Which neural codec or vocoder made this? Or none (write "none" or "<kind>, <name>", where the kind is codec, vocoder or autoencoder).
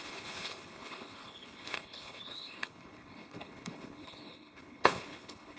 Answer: codec, HILCodec